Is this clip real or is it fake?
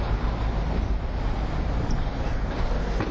real